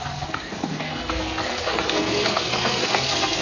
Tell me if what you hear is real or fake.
fake